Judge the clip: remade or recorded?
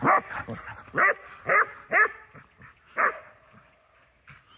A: recorded